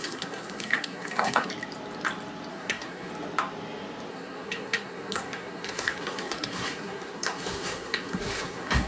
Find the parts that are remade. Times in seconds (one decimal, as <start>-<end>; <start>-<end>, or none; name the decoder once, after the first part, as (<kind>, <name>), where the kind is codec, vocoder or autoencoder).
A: 0.0-1.5 (codec, SNAC); 2.5-3.1; 4.1-8.9